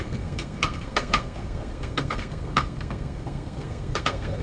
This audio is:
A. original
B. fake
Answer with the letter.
B